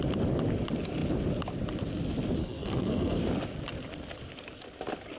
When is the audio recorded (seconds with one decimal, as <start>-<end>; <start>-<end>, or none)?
0.0-2.4; 3.2-5.2